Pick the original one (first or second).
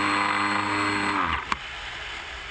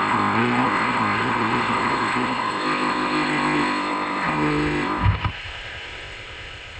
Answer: first